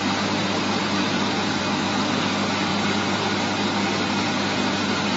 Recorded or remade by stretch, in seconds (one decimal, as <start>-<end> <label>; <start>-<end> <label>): 0.0-0.4 recorded; 0.4-1.6 remade; 1.6-5.2 recorded